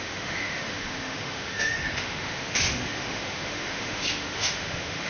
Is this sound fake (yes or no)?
yes